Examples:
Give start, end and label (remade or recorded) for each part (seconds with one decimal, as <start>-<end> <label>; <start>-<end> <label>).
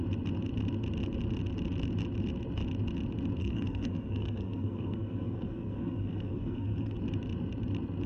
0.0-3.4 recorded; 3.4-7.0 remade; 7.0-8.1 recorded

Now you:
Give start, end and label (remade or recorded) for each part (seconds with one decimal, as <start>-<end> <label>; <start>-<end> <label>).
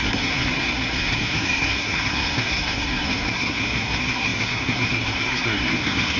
0.0-6.2 remade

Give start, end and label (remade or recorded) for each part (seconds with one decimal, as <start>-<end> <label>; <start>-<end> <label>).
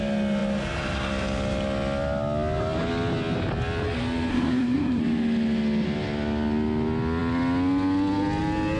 0.0-4.3 recorded; 4.3-5.0 remade; 5.0-8.8 recorded